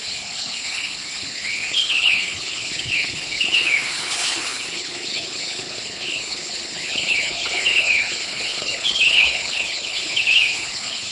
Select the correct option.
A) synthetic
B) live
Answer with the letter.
A